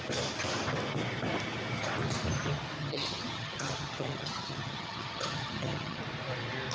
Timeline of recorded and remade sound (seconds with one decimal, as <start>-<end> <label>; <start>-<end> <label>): 0.0-2.8 recorded; 2.8-6.0 remade; 6.0-6.7 recorded